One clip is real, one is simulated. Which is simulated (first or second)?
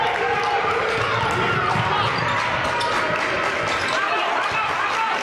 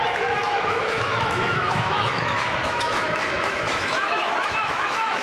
second